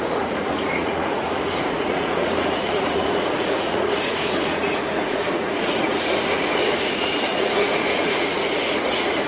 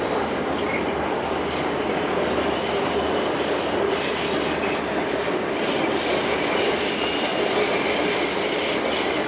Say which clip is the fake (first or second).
first